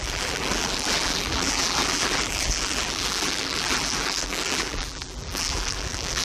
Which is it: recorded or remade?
remade